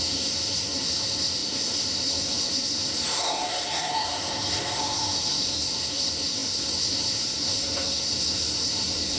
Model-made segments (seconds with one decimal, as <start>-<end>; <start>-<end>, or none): 0.0-9.2